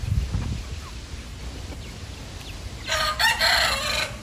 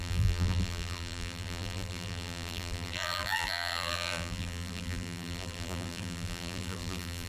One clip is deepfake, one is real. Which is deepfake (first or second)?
second